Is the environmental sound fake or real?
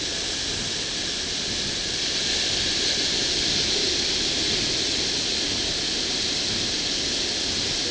real